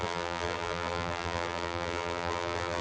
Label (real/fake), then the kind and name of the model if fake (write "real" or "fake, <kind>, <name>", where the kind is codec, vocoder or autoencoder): fake, vocoder, BigVGAN v2